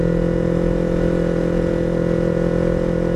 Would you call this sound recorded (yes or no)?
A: yes